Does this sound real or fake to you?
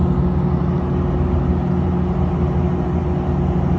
real